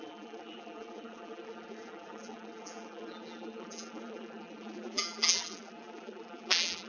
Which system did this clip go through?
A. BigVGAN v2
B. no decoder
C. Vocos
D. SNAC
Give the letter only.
A